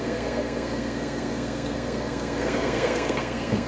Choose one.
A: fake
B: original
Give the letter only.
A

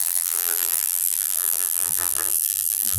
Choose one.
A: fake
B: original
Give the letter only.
A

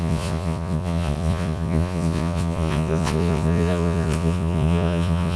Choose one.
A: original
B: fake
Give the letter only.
B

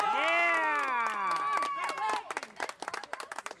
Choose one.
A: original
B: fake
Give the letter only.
A